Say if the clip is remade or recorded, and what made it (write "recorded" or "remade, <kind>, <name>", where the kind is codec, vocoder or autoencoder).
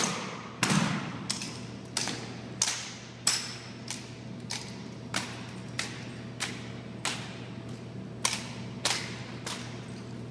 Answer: recorded